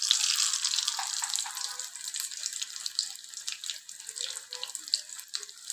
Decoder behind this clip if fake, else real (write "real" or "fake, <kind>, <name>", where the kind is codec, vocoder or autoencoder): real